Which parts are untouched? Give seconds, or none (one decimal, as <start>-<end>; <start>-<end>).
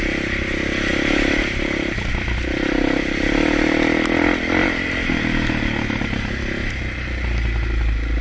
0.0-0.9; 2.1-4.6; 5.2-8.2